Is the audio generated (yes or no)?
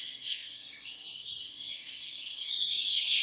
yes